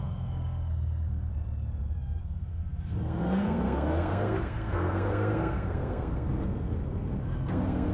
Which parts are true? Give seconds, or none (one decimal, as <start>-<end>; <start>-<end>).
1.3-2.2